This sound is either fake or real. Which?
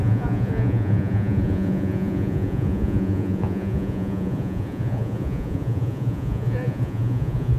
fake